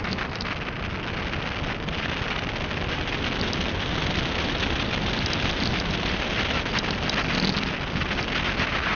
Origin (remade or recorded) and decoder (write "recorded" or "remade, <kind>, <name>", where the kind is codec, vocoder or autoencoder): recorded